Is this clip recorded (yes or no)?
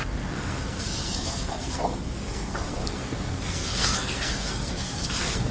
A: no